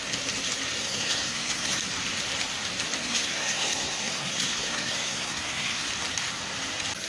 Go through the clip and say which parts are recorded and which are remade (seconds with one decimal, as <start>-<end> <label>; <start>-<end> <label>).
0.0-0.8 recorded; 0.8-1.8 remade; 1.8-3.0 recorded; 3.0-5.9 remade; 5.9-7.1 recorded